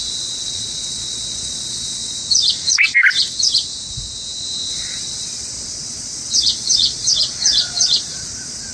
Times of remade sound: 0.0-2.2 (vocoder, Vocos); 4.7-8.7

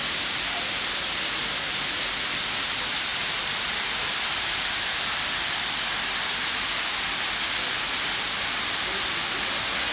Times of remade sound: none

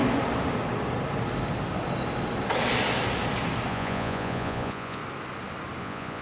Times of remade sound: 3.7-5.0 (vocoder, Vocos); 5.8-6.2

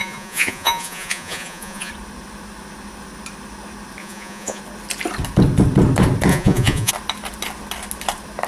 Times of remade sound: 0.0-1.9 (vocoder, Vocos); 4.0-4.6; 6.3-6.9

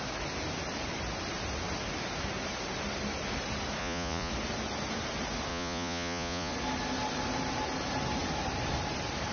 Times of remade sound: 3.8-4.3 (vocoder, Vocos); 5.5-6.5

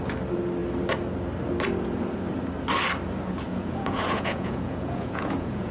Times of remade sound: 3.5-5.7 (vocoder, Vocos)

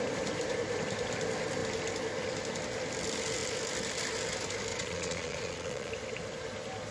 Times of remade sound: 4.7-5.9 (vocoder, Vocos)

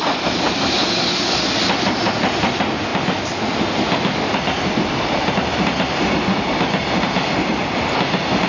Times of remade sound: none